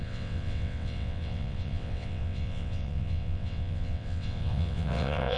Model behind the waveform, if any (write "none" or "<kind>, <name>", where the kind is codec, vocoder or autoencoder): vocoder, WaveNeXt